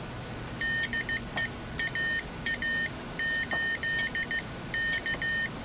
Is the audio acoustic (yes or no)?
yes